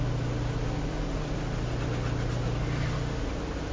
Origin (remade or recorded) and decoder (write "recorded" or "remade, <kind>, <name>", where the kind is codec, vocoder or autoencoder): recorded